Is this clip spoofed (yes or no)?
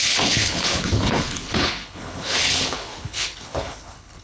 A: yes